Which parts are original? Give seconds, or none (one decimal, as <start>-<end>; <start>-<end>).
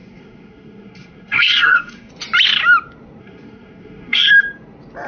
2.1-3.2; 4.3-5.1